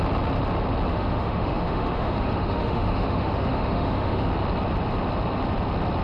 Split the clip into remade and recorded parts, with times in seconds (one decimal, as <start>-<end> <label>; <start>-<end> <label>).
0.0-0.9 recorded; 0.9-4.3 remade; 4.3-6.0 recorded